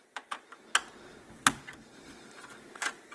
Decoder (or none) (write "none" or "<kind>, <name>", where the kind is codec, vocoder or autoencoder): none